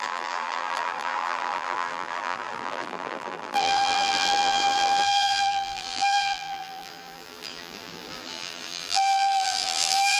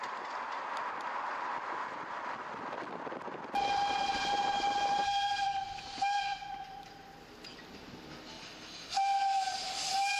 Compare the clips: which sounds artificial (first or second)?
first